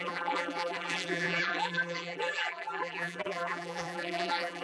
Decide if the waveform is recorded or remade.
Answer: remade